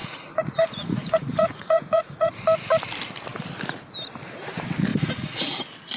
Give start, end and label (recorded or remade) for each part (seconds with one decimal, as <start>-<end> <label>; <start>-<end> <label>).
0.0-2.3 remade; 2.3-4.9 recorded; 4.9-5.6 remade; 5.6-6.0 recorded